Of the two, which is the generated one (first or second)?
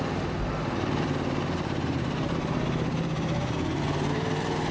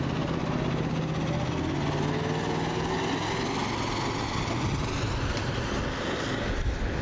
first